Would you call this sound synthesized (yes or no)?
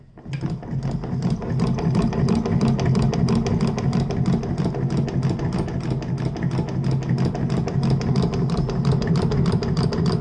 no